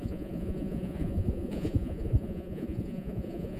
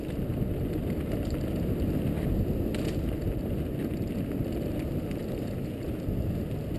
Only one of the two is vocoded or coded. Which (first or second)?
first